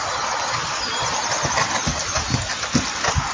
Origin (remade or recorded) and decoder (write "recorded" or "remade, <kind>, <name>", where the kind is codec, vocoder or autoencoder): recorded